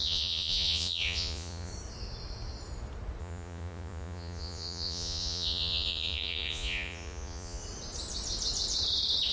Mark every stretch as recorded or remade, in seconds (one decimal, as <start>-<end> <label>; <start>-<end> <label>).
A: 0.0-1.7 remade; 1.7-3.2 recorded; 3.2-7.6 remade; 7.6-9.3 recorded